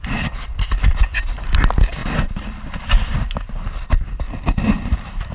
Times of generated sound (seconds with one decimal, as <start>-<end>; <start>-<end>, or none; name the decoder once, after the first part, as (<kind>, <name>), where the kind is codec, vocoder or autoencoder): none